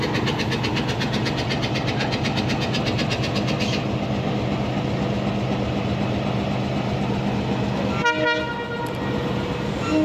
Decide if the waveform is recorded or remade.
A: recorded